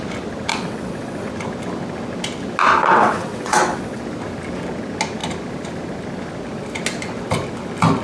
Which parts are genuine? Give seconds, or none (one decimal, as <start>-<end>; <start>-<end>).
0.0-0.5; 1.3-2.9; 4.0-8.0

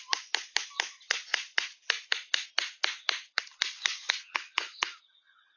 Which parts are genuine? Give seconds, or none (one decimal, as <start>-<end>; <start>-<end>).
0.0-3.9; 4.8-5.6

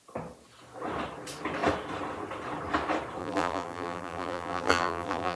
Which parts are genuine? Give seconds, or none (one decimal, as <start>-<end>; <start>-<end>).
0.0-3.2